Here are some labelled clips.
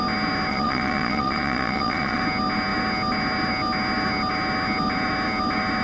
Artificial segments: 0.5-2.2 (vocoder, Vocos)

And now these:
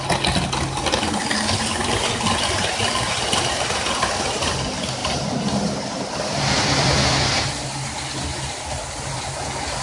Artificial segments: none

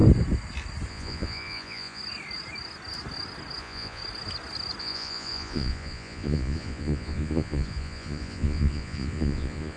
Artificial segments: 0.9-2.0 (vocoder, Vocos); 3.6-4.0; 4.8-9.8

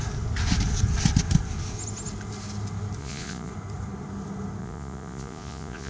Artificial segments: 3.0-3.5 (vocoder, Vocos); 4.6-5.9

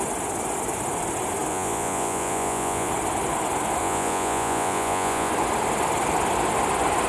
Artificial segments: 1.5-2.9 (vocoder, Vocos); 3.8-5.3

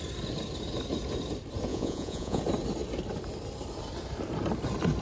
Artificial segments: 1.7-2.4 (vocoder, Vocos)

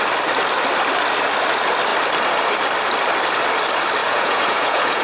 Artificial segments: 4.0-5.0 (vocoder, Vocos)